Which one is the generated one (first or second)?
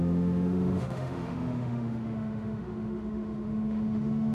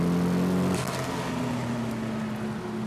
first